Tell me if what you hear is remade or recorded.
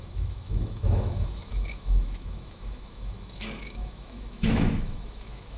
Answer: remade